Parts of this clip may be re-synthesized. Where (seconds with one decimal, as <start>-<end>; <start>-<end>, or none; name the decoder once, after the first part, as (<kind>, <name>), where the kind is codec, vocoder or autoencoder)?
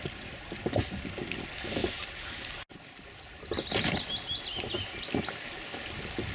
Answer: none